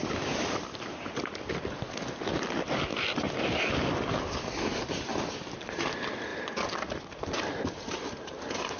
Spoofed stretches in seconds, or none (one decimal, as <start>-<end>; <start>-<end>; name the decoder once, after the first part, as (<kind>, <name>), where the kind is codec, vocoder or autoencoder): none